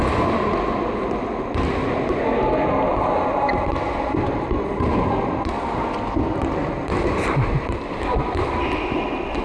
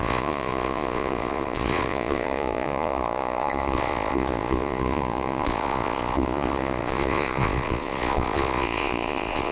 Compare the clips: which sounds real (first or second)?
first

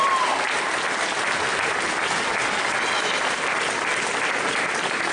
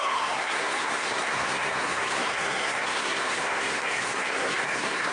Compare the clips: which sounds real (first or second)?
first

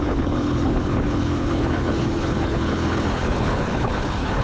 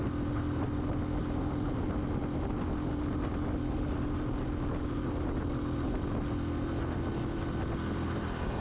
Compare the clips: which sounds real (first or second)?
second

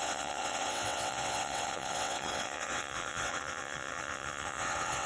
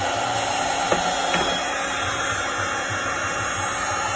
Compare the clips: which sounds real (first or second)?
second